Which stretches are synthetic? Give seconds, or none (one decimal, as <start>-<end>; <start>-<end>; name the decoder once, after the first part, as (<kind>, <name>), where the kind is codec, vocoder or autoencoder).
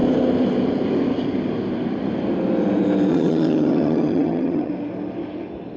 3.1-4.7 (vocoder, HiFi-GAN)